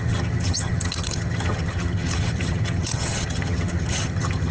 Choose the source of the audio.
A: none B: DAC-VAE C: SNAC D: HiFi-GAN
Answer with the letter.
D